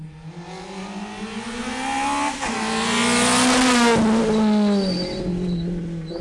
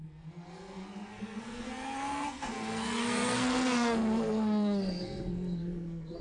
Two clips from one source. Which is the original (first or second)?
first